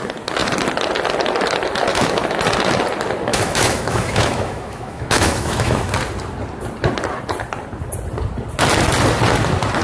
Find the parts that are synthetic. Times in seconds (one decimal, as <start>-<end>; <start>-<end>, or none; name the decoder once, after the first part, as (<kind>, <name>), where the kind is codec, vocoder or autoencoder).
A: 1.9-2.4 (autoencoder, DAC-VAE); 3.3-5.9